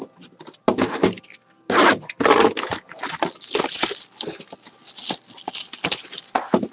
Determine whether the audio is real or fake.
real